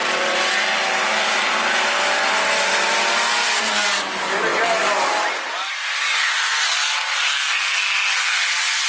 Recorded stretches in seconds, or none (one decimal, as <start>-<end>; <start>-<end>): 0.0-8.9

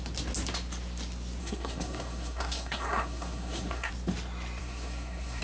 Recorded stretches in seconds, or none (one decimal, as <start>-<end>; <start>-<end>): 0.0-1.4; 3.9-4.6